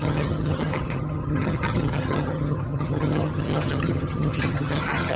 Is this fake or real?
fake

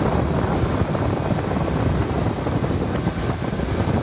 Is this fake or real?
real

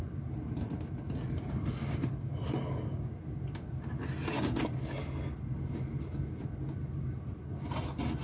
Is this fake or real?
real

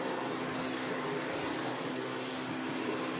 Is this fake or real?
real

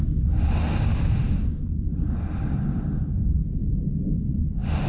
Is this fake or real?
real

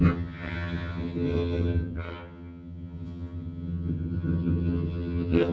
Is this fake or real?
fake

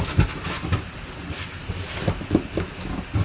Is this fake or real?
real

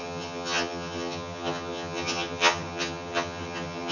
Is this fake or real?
fake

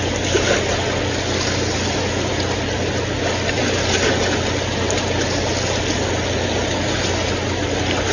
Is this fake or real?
real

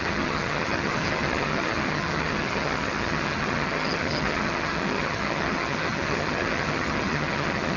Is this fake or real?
fake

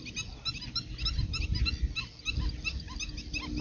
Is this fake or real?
real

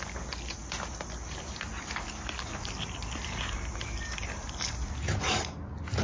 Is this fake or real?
real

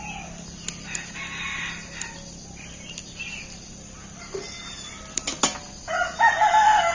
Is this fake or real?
real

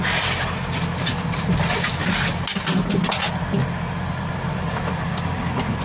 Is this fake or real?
real